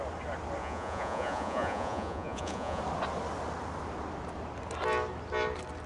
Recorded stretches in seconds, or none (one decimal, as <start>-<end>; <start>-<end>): 0.0-0.6; 2.8-5.9